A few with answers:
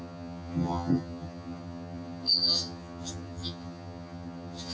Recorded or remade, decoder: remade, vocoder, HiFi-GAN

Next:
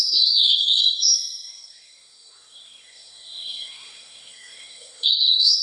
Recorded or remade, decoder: remade, codec, SNAC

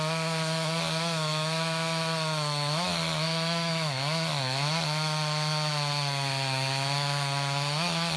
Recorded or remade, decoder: remade, autoencoder, DAC-VAE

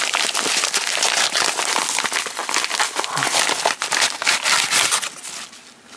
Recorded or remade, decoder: recorded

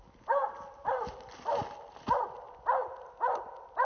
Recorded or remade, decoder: recorded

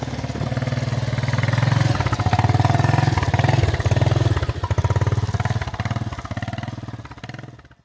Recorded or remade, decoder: recorded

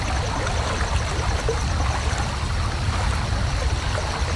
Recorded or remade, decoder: recorded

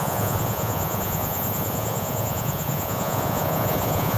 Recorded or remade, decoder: remade, vocoder, Vocos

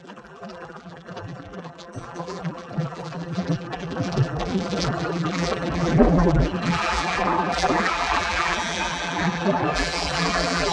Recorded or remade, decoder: remade, vocoder, BigVGAN v2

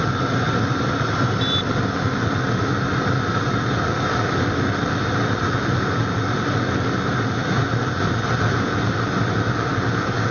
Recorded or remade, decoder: recorded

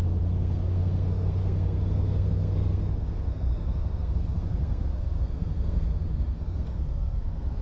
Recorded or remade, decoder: remade, codec, SNAC